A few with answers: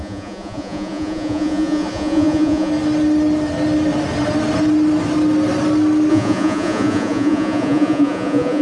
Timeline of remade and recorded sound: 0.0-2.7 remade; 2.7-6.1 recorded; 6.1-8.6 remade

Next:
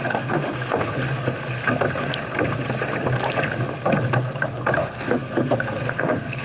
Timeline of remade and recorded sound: 0.0-0.9 remade; 0.9-4.7 recorded; 4.7-6.4 remade

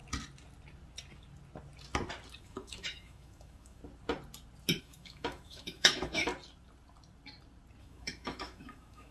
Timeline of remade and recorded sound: 0.0-2.4 recorded; 2.4-3.8 remade; 3.8-4.8 recorded; 4.8-6.3 remade; 6.3-7.8 recorded; 7.8-9.1 remade

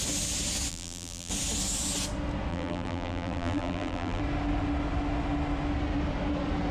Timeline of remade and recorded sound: 0.0-0.7 recorded; 0.7-1.3 remade; 1.3-2.5 recorded; 2.5-4.2 remade; 4.2-6.7 recorded

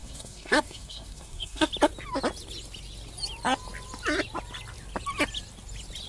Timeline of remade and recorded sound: 0.0-1.7 remade; 1.7-6.1 recorded

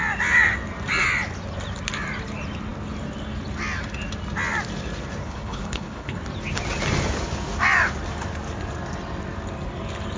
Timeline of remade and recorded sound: 0.0-5.2 recorded; 5.2-6.2 remade; 6.2-10.2 recorded

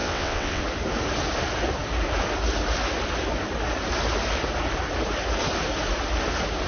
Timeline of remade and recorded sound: 0.0-0.6 remade; 0.6-6.7 recorded